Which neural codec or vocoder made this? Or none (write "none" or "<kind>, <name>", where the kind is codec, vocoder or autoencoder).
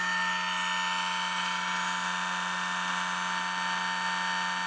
none